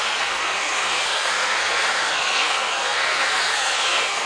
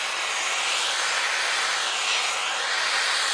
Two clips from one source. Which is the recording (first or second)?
second